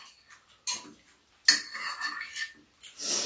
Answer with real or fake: real